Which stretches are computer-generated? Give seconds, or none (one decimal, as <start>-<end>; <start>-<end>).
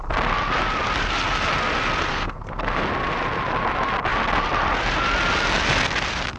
2.1-2.8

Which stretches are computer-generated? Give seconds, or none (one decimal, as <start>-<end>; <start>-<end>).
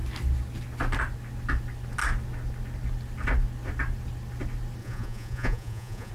4.8-6.1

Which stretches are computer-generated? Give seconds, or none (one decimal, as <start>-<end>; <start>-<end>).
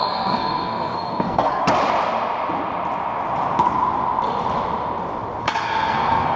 0.0-1.6; 5.4-6.4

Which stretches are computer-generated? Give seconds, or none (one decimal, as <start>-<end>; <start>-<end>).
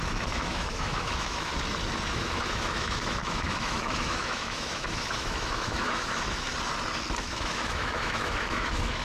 0.0-1.5; 2.1-6.5; 7.2-9.0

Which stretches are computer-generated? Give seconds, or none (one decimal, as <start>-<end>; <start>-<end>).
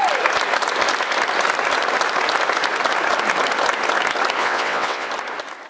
4.4-5.1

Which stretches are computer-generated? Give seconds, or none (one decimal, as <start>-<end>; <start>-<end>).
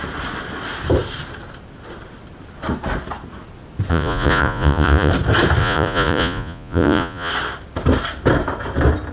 3.9-5.1; 5.6-7.3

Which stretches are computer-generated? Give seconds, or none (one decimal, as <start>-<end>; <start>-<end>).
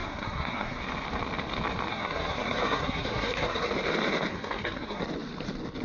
0.0-0.8; 1.9-3.7; 4.3-5.0